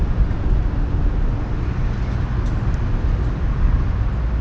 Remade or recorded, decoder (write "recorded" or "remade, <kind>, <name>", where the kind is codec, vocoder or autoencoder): recorded